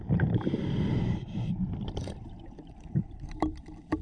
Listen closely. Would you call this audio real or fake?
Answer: fake